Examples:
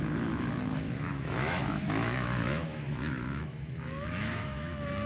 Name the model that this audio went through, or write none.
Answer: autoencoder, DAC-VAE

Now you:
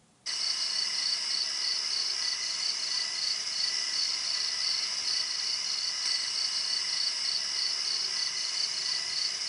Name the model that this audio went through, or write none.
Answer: none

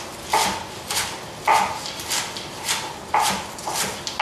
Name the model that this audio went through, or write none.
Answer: none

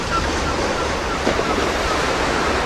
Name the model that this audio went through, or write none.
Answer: none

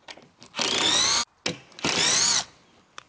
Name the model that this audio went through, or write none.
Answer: none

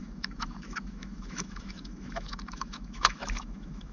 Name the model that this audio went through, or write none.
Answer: autoencoder, DAC-VAE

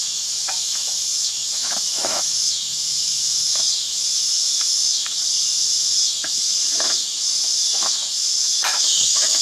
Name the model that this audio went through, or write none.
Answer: autoencoder, DAC-VAE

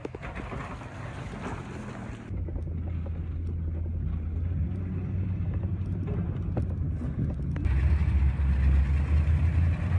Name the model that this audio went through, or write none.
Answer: none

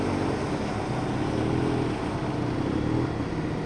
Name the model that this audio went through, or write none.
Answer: none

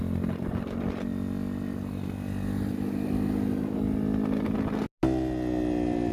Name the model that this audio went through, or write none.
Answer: none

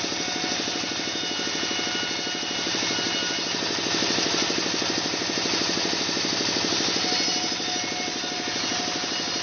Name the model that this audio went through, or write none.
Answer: none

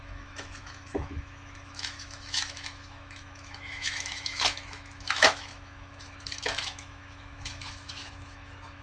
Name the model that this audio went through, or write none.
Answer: autoencoder, DAC-VAE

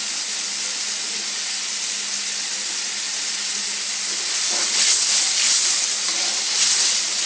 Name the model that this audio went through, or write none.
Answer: none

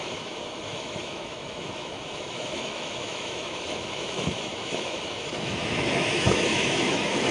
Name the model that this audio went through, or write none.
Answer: autoencoder, DAC-VAE